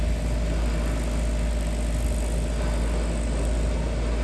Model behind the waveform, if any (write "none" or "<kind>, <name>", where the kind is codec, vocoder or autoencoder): none